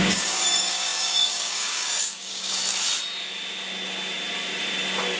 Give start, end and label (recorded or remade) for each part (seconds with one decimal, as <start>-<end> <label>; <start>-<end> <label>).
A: 0.0-2.6 remade; 2.6-5.2 recorded

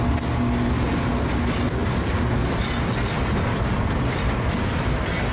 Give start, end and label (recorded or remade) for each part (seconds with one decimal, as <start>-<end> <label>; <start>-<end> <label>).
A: 0.0-5.3 recorded

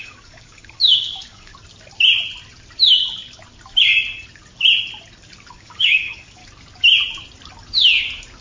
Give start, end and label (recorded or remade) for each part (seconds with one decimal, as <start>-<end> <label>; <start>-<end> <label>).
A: 0.0-1.5 remade; 1.5-5.5 recorded; 5.5-6.4 remade; 6.4-8.4 recorded

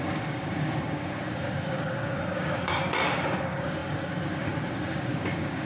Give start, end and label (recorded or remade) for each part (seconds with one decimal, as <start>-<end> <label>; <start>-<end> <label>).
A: 0.0-5.7 remade

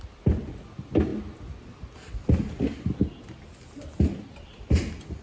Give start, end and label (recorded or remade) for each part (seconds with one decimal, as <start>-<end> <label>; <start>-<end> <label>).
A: 0.0-5.2 recorded